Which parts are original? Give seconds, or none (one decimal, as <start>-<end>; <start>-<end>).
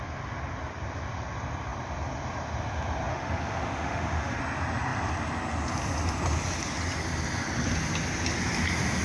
0.0-3.1; 4.4-9.0